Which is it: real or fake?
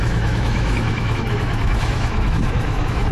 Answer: fake